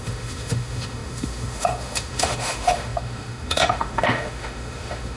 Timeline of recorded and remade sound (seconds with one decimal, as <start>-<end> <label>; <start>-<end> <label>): 0.0-5.2 remade